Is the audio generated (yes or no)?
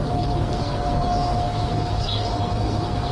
yes